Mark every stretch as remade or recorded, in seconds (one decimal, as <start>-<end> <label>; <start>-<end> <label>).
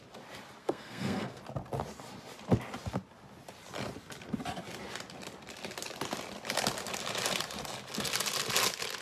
0.0-0.6 recorded; 0.6-1.4 remade; 1.4-9.0 recorded